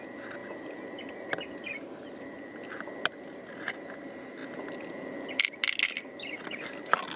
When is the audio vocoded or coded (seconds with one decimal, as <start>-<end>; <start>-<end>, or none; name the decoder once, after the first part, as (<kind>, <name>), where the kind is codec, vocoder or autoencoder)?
none